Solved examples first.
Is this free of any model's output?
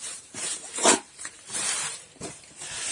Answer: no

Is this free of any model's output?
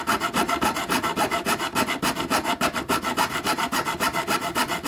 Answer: no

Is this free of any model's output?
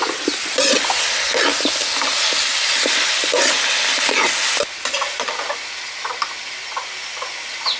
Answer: yes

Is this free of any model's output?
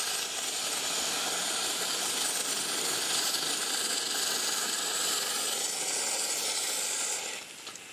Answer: yes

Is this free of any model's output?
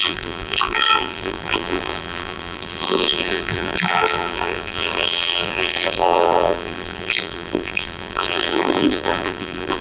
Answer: no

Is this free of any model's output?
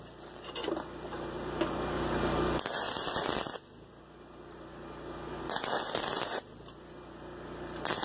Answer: yes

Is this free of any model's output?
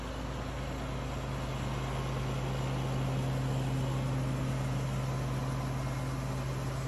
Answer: yes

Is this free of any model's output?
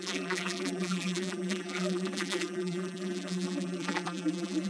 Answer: no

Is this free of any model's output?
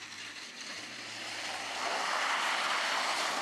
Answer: no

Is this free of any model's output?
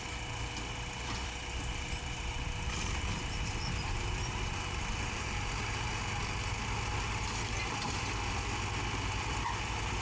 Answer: no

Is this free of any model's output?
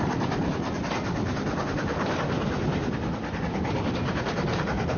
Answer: yes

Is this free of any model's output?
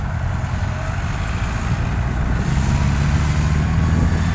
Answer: yes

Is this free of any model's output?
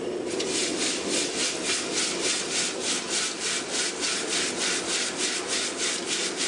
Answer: yes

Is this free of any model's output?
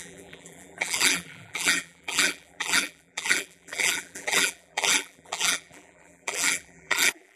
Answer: no